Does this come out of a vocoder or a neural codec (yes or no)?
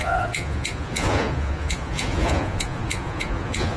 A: yes